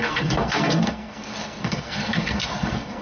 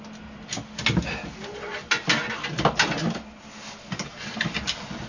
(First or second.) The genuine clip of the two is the second